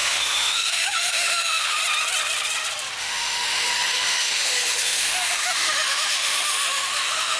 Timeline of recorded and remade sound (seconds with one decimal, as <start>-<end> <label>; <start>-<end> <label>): 0.0-1.8 remade; 1.8-3.0 recorded; 3.0-7.4 remade